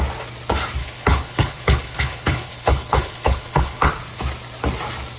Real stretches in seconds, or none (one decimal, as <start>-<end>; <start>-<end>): 0.0-0.8; 3.9-5.2